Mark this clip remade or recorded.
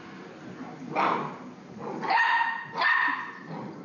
recorded